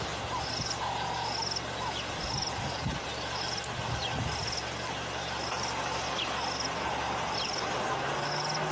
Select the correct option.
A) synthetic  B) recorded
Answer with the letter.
B